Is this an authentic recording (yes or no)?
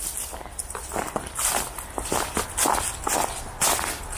yes